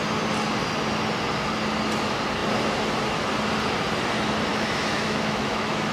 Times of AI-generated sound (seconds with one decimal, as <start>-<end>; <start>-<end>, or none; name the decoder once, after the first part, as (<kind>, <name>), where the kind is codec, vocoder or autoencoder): 4.5-5.9 (autoencoder, DAC-VAE)